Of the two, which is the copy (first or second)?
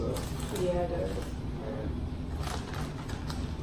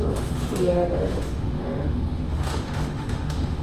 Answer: second